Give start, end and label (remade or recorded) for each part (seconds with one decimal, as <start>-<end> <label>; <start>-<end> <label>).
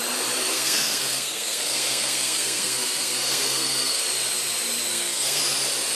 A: 0.0-0.5 recorded; 0.5-4.0 remade; 4.0-4.9 recorded; 4.9-5.4 remade; 5.4-5.9 recorded